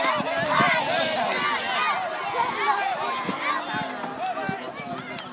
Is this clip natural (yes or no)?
yes